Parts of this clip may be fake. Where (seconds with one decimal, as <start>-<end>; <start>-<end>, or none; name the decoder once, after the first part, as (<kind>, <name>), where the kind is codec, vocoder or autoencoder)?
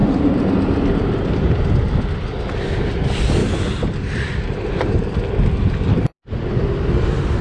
0.0-0.5 (vocoder, BigVGAN v2); 5.9-6.6